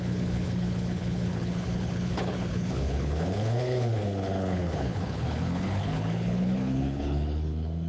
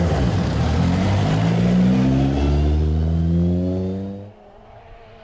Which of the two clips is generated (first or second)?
first